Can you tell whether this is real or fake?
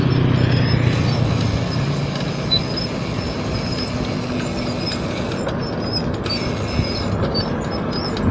real